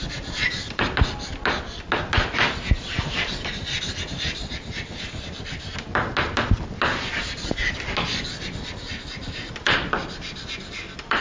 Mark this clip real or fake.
real